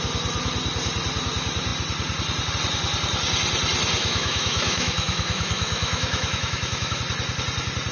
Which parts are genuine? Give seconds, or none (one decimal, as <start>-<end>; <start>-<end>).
0.0-4.0; 7.0-7.9